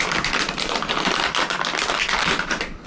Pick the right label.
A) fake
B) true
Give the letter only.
B